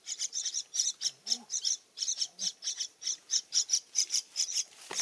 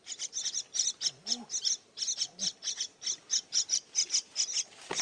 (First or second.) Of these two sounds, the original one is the second